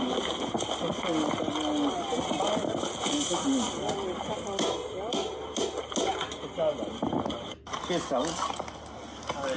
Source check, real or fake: real